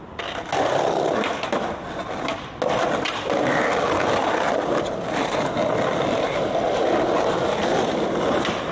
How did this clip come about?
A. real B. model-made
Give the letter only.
A